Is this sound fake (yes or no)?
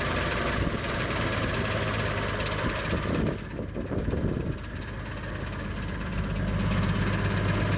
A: no